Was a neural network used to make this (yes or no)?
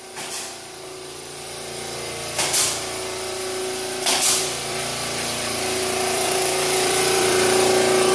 yes